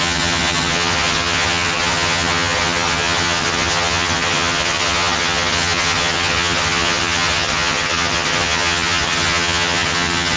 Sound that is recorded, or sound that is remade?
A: remade